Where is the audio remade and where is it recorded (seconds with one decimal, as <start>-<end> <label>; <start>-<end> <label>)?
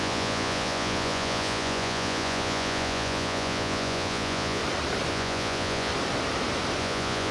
0.0-4.6 remade; 4.6-5.1 recorded; 5.1-5.9 remade; 5.9-6.8 recorded; 6.8-7.3 remade